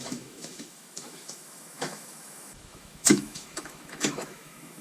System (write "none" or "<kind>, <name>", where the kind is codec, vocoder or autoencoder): autoencoder, DAC-VAE